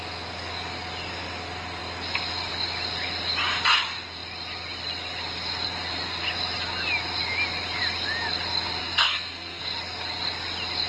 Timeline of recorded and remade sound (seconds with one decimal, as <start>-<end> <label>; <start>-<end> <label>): 0.0-8.8 recorded; 8.8-9.6 remade; 9.6-10.9 recorded